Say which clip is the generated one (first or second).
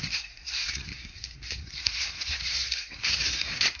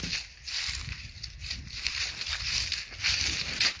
first